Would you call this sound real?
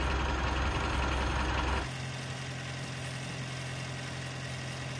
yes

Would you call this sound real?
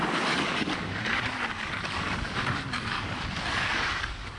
no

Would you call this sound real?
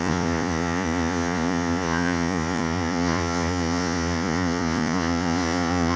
no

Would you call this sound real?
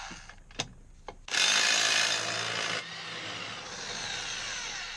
yes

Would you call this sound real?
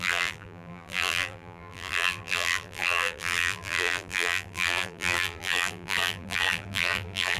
no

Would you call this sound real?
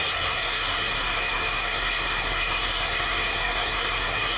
no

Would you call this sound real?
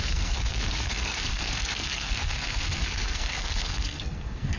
no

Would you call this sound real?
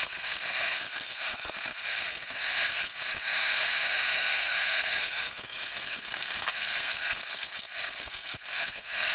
no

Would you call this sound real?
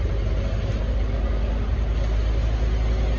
yes